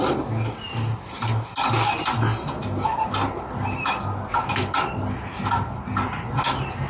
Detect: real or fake real